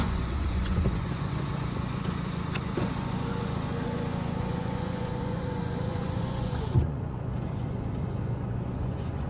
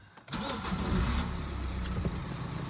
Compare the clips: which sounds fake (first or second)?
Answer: first